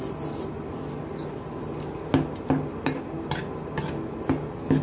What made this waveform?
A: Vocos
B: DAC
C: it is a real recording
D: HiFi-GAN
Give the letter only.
C